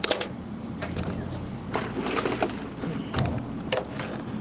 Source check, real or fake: real